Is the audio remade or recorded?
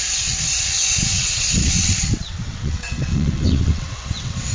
remade